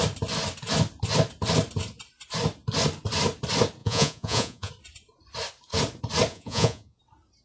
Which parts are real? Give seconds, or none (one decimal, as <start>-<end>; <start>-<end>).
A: 0.0-3.8; 4.7-6.3; 7.0-7.4